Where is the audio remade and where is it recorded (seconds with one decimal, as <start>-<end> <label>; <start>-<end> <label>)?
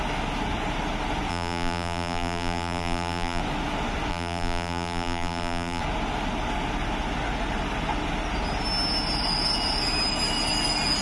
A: 0.0-1.3 recorded; 1.3-3.4 remade; 3.4-4.1 recorded; 4.1-5.8 remade; 5.8-11.0 recorded